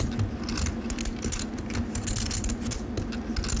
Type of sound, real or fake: real